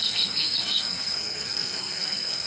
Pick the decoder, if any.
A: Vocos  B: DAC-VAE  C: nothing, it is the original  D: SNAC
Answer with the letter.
D